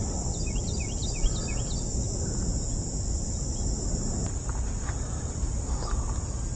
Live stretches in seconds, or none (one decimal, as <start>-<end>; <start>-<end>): 0.0-6.6